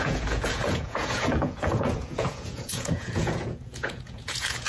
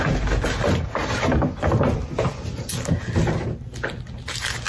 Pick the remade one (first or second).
first